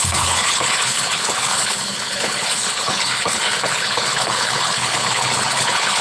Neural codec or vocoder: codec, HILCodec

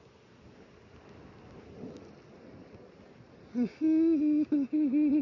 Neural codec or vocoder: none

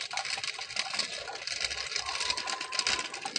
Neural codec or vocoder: none